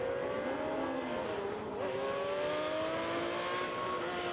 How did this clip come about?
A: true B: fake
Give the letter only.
A